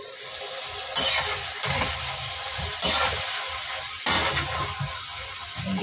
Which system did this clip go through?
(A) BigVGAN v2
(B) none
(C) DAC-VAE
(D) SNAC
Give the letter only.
B